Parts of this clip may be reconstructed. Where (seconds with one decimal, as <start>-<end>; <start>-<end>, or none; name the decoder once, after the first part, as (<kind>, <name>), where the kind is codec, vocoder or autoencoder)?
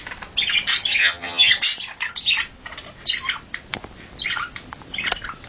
1.0-1.5 (vocoder, HiFi-GAN)